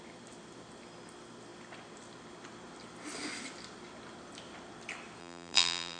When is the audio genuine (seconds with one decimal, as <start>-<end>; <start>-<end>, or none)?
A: 0.0-5.2